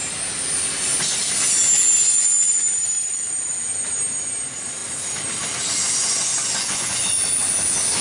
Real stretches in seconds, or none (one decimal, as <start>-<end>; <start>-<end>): 0.0-6.0; 7.0-8.0